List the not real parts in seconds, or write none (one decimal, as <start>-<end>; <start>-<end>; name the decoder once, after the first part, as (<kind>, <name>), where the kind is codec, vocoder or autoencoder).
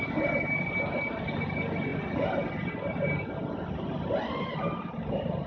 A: none